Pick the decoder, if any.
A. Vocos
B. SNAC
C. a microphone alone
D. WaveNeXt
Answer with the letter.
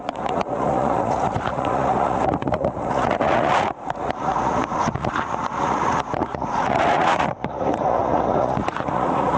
A